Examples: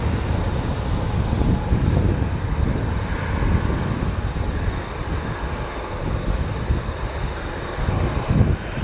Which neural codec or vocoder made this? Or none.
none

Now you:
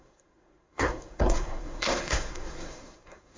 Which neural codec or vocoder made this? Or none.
codec, SNAC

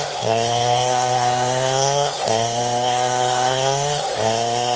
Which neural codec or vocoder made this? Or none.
codec, SNAC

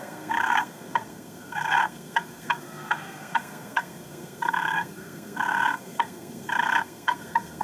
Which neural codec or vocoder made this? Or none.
codec, SNAC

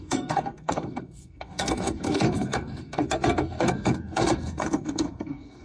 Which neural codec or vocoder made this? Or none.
codec, SNAC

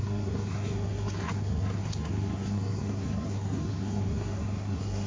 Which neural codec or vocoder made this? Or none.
codec, SNAC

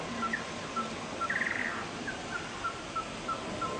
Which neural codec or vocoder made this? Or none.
none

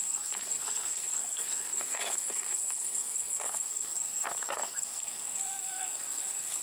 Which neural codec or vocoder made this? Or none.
codec, SNAC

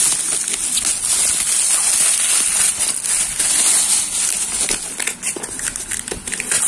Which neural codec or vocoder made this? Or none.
none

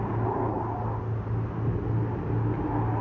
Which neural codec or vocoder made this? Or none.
none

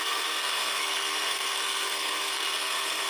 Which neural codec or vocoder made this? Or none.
codec, SNAC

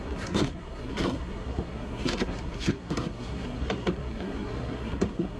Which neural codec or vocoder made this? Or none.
codec, SNAC